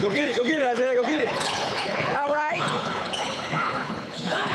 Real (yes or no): no